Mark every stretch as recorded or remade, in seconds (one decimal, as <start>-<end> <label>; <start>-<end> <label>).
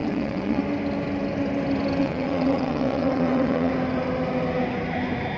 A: 0.0-0.6 remade; 0.6-2.0 recorded; 2.0-3.7 remade; 3.7-5.4 recorded